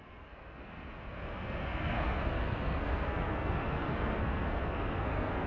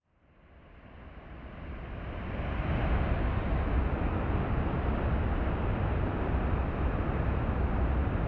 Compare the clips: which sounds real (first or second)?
second